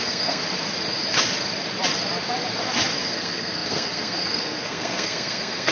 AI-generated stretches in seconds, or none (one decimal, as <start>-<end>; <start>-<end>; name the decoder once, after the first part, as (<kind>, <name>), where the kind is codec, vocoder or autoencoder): 0.0-0.4 (codec, SNAC); 3.0-5.7